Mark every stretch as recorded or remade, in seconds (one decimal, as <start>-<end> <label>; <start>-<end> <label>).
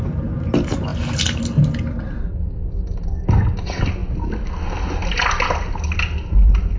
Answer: 0.0-6.8 recorded